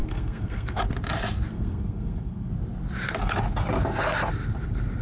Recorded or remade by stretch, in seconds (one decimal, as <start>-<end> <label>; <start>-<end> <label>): 0.0-0.8 remade; 0.8-1.5 recorded; 1.5-2.5 remade; 2.5-5.0 recorded